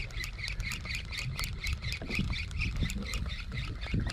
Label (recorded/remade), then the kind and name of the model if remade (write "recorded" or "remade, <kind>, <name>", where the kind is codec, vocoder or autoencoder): recorded